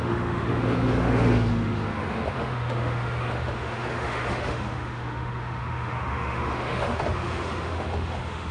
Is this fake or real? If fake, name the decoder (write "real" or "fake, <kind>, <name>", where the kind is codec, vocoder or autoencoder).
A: fake, autoencoder, DAC-VAE